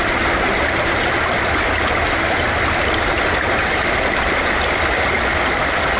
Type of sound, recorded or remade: recorded